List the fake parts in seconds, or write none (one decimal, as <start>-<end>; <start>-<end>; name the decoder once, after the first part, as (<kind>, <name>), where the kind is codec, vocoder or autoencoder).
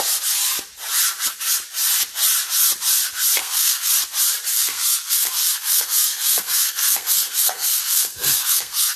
3.4-3.9 (codec, SNAC); 4.5-9.0